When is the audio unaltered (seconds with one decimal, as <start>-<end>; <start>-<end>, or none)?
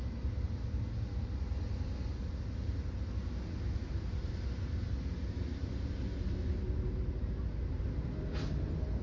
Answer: 0.0-9.0